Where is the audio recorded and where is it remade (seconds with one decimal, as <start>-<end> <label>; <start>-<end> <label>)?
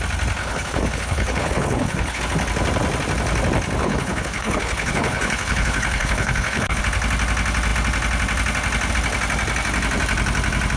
0.0-0.4 recorded; 0.4-2.2 remade; 2.2-3.8 recorded; 3.8-6.8 remade; 6.8-10.8 recorded